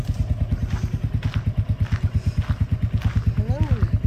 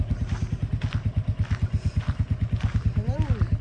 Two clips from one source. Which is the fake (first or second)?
second